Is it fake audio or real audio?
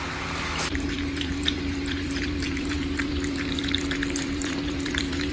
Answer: fake